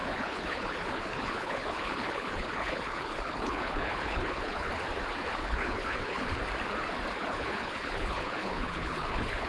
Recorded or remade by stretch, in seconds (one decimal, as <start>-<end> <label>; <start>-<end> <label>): 0.0-4.7 remade; 4.7-5.3 recorded; 5.3-6.4 remade; 6.4-7.2 recorded; 7.2-9.5 remade